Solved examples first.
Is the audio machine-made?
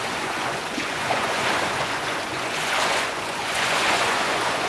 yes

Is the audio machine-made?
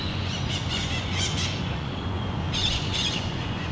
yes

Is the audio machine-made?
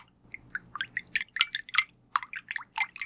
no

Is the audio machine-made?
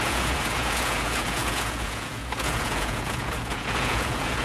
yes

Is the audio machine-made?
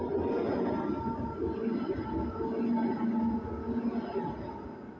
no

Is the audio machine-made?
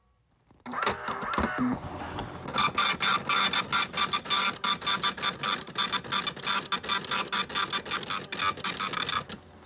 no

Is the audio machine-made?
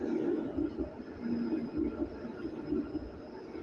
no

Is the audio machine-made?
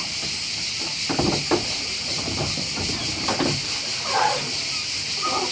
no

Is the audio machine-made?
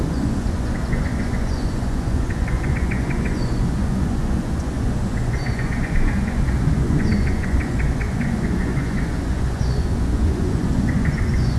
yes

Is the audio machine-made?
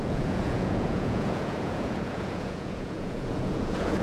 yes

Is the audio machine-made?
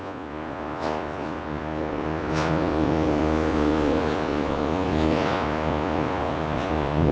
yes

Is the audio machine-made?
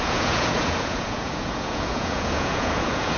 yes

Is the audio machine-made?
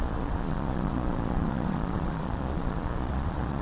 yes